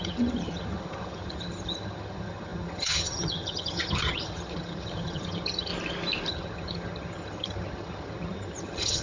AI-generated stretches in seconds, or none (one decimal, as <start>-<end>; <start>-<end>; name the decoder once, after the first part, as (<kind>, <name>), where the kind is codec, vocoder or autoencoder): 0.0-5.7 (vocoder, HiFi-GAN); 6.3-9.0